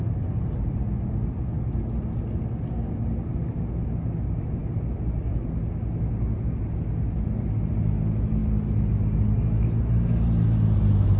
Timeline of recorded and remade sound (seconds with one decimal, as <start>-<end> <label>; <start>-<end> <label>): 0.0-11.2 recorded